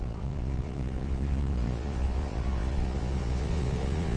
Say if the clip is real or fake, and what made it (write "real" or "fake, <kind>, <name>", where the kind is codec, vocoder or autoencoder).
fake, vocoder, Vocos